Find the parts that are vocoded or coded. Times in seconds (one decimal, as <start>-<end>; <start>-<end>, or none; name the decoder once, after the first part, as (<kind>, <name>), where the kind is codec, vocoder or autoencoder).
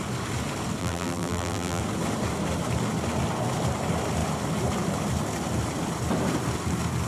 0.8-1.8 (vocoder, BigVGAN v2)